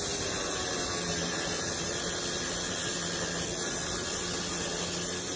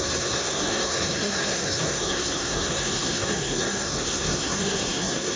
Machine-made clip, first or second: second